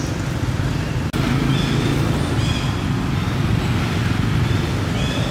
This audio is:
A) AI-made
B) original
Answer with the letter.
B